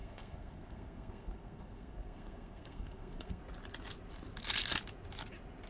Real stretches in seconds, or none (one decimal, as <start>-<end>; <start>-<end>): 3.4-5.7